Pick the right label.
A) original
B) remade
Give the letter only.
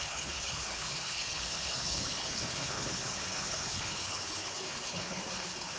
B